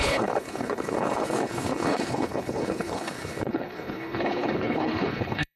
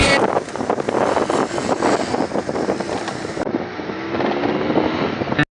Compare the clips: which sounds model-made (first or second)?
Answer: first